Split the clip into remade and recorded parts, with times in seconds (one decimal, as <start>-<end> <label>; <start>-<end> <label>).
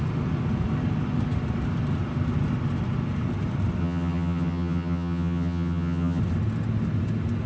0.0-3.8 recorded; 3.8-6.2 remade; 6.2-7.5 recorded